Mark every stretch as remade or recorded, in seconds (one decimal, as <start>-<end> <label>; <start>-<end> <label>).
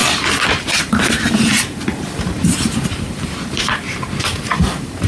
0.0-0.8 recorded; 0.8-5.1 remade